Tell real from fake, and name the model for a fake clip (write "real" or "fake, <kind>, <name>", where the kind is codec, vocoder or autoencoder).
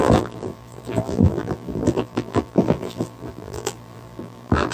fake, vocoder, BigVGAN v2